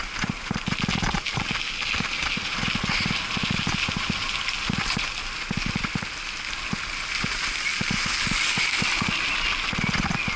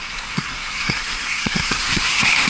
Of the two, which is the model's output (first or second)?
second